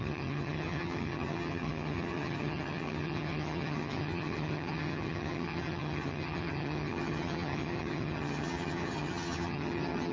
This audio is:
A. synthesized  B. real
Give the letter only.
A